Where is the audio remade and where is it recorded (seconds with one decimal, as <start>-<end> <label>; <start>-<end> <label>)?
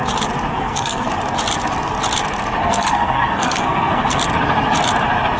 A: 0.0-0.5 recorded; 0.5-1.1 remade; 1.1-2.6 recorded; 2.6-4.2 remade; 4.2-5.4 recorded